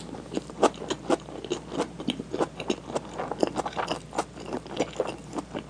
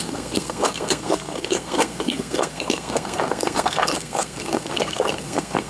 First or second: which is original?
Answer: first